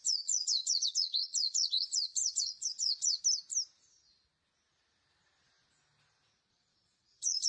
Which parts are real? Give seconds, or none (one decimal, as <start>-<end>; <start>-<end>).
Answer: 3.2-6.5